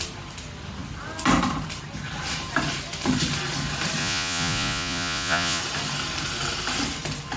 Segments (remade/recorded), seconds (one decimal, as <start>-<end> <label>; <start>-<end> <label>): 0.0-4.0 recorded; 4.0-5.6 remade; 5.6-7.4 recorded